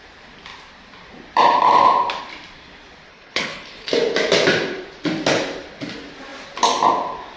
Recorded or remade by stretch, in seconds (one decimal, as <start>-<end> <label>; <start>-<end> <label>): 0.0-3.1 recorded; 3.1-3.9 remade; 3.9-7.4 recorded